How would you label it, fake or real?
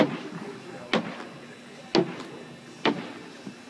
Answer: real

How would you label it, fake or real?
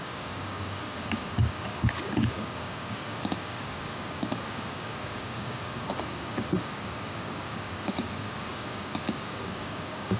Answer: fake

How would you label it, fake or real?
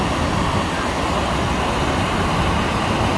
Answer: real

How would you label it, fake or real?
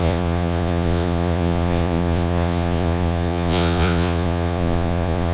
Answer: fake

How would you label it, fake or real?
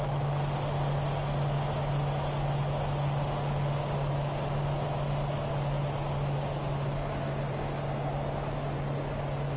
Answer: real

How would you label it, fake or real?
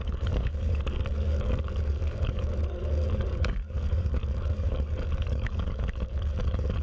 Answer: fake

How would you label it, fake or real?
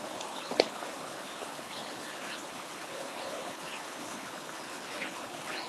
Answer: fake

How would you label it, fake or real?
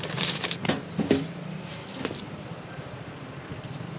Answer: real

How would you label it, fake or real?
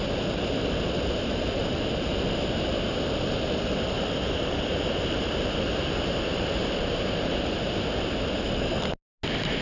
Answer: real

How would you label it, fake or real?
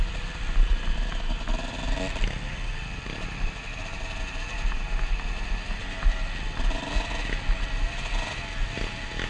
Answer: real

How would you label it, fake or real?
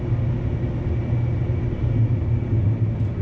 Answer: real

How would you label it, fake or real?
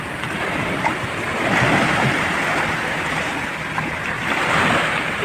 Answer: real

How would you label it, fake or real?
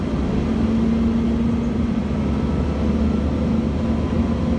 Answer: real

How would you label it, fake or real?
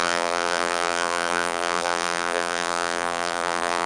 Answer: fake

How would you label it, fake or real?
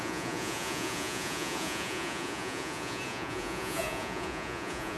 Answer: fake